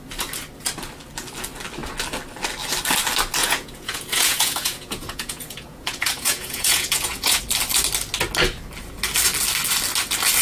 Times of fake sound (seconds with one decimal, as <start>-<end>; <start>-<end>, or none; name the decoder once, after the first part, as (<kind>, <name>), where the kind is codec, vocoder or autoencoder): 3.4-7.4 (vocoder, Vocos)